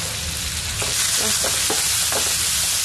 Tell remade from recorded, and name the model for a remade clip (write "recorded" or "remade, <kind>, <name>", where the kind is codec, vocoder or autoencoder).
recorded